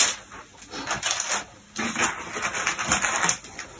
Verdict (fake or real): real